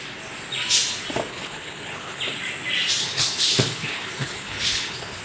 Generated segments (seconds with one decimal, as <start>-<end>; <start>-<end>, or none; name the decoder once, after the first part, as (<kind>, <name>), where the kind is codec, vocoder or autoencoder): 1.3-2.2 (codec, HILCodec); 3.0-5.2